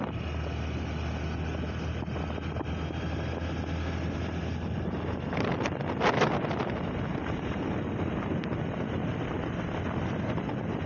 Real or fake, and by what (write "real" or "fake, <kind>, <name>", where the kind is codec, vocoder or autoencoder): real